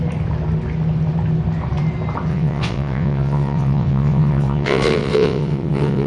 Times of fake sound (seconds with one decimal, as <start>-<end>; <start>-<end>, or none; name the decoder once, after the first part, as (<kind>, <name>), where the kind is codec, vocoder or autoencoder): 2.3-6.1 (vocoder, WaveNeXt)